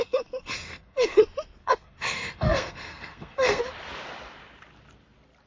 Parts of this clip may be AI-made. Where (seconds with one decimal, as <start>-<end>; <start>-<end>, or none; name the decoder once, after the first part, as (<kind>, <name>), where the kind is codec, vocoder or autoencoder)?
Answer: 0.0-1.2 (codec, SNAC); 1.6-3.6